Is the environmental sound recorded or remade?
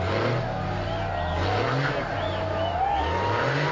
recorded